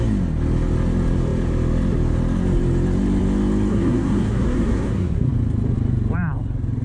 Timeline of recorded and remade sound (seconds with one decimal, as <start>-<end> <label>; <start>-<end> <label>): 0.0-3.7 recorded; 3.7-5.3 remade; 5.3-6.8 recorded